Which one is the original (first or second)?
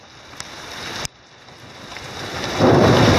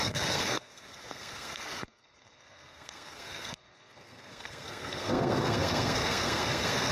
first